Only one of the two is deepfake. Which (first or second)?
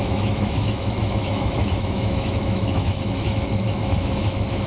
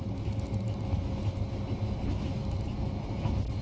first